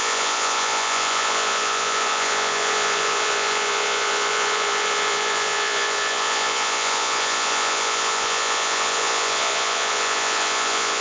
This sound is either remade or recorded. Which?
remade